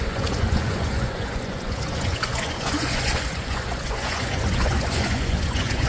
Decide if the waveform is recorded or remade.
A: remade